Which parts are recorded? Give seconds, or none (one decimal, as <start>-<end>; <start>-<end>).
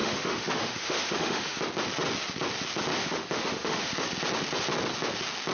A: 1.6-3.0; 3.9-5.5